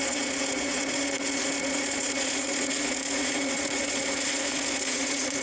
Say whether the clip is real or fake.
fake